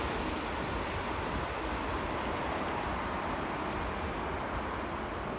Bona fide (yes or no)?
yes